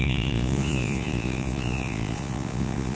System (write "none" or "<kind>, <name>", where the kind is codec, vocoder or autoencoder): vocoder, Vocos